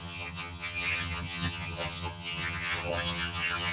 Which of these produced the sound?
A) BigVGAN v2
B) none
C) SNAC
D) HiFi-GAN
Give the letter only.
D